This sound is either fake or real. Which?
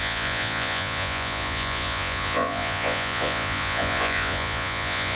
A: fake